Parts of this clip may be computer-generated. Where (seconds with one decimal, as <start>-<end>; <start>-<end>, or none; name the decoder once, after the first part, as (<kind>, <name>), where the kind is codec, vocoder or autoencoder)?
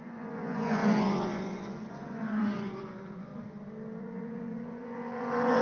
0.0-3.3 (vocoder, Vocos); 4.0-5.6